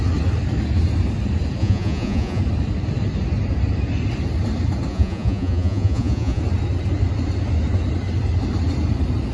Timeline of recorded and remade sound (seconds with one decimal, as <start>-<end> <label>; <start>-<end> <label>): 0.0-1.6 recorded; 1.6-2.4 remade; 2.4-4.9 recorded; 4.9-6.4 remade; 6.4-9.3 recorded

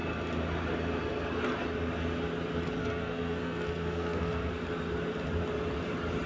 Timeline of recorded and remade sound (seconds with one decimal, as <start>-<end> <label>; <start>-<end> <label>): 0.0-2.8 recorded; 2.8-4.5 remade; 4.5-6.3 recorded

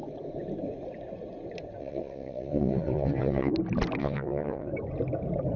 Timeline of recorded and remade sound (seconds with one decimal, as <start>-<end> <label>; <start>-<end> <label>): 0.0-1.8 recorded; 1.8-3.5 remade; 3.5-4.0 recorded; 4.0-4.7 remade; 4.7-5.6 recorded

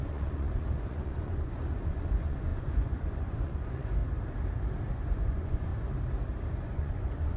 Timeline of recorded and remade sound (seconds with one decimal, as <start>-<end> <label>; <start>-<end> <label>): 0.0-4.0 remade; 4.0-4.9 recorded; 4.9-5.7 remade; 5.7-6.5 recorded; 6.5-7.4 remade

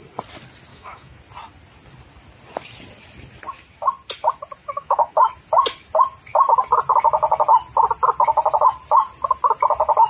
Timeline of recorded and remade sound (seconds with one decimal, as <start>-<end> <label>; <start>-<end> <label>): 0.0-0.7 recorded; 0.7-1.2 remade; 1.2-4.6 recorded; 4.6-5.3 remade; 5.3-10.1 recorded